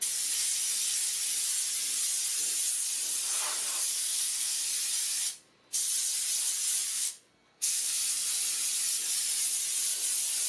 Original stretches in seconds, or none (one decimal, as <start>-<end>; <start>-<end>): 0.0-3.9; 4.6-6.9; 8.0-10.5